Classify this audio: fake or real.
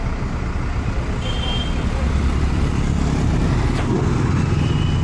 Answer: real